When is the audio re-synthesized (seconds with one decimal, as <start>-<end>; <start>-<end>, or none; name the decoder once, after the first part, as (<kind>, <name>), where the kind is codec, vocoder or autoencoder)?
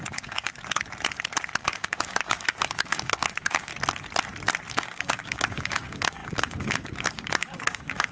0.0-0.5 (codec, DAC); 1.6-3.7; 4.7-8.1